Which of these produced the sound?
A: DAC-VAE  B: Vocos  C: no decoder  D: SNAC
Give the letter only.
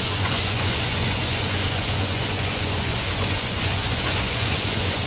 B